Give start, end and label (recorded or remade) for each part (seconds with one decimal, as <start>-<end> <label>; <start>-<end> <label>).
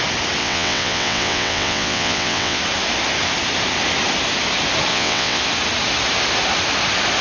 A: 0.0-0.4 recorded; 0.4-2.6 remade; 2.6-4.9 recorded; 4.9-5.4 remade; 5.4-7.2 recorded